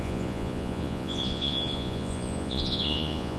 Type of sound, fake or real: fake